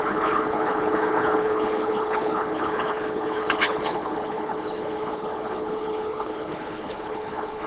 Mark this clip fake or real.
fake